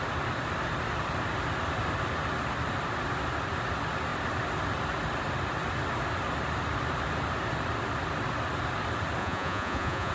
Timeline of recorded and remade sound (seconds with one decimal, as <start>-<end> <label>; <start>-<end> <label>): 0.0-9.2 recorded; 9.2-10.1 remade